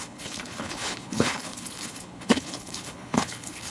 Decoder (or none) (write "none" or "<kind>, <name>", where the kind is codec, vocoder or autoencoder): codec, HILCodec